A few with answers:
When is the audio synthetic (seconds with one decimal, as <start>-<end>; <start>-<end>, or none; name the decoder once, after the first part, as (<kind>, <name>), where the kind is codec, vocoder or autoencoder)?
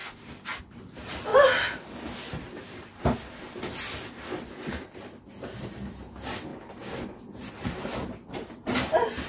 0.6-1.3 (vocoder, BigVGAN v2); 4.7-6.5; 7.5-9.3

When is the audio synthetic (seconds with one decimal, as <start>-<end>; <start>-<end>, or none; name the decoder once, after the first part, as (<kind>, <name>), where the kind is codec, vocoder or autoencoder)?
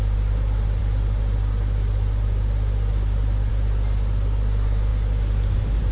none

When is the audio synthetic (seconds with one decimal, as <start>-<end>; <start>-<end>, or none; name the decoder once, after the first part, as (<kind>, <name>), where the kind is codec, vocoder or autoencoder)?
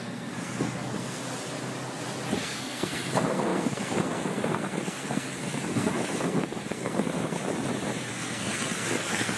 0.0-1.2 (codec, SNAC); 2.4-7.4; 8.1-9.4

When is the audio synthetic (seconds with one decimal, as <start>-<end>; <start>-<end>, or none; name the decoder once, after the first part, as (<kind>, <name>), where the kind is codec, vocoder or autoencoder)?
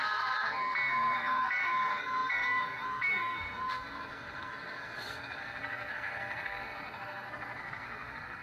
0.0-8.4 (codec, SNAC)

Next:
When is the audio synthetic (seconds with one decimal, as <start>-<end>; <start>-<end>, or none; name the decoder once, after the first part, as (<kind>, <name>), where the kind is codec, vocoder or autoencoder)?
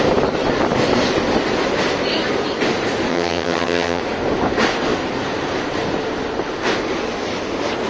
3.1-4.0 (vocoder, HiFi-GAN)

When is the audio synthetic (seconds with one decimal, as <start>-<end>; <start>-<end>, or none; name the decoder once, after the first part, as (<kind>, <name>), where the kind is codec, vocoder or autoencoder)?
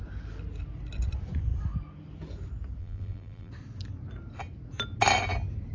2.8-3.5 (vocoder, BigVGAN v2)